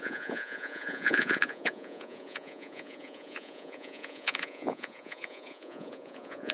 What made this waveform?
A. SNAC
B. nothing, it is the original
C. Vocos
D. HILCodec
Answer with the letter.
C